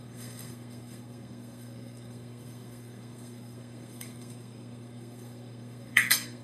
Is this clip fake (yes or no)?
yes